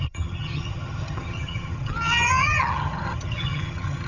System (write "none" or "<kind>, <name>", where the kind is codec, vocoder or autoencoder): vocoder, HiFi-GAN